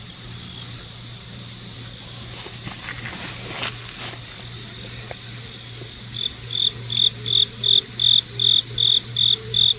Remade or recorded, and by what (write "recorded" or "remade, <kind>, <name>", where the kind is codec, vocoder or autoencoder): recorded